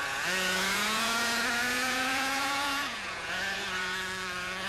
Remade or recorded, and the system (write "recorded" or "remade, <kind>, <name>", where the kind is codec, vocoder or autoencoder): remade, vocoder, Vocos